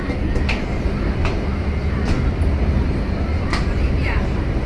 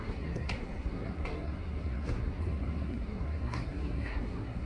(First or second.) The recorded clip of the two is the first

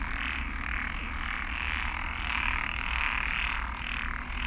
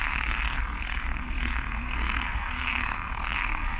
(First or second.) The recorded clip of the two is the first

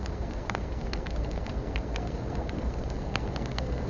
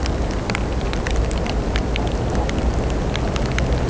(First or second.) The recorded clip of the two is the second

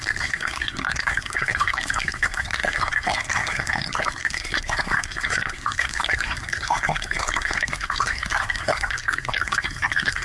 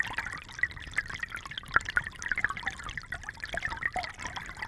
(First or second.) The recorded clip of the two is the second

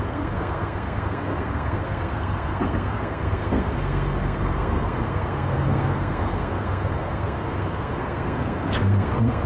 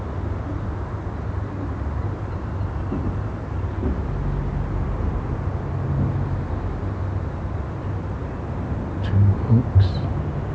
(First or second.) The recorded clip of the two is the second